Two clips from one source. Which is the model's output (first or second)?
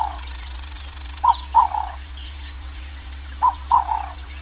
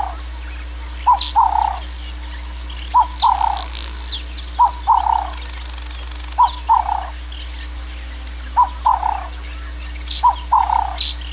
first